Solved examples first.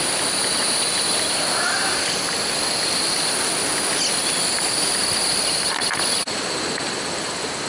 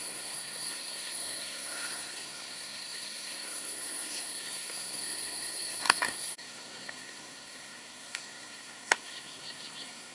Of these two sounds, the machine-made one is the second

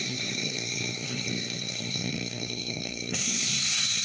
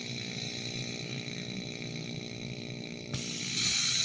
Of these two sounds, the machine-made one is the first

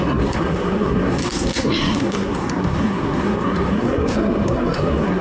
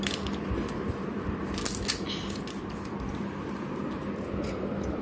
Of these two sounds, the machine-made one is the first